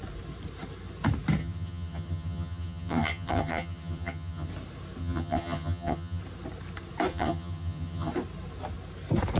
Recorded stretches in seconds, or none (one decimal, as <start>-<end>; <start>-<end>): 0.0-1.4; 4.5-5.0; 6.2-7.1; 8.1-9.4